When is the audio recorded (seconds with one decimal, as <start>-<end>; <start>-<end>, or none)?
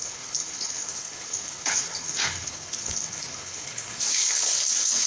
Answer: none